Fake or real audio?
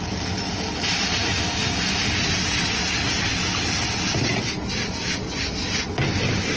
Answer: real